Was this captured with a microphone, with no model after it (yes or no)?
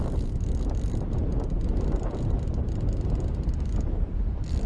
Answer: yes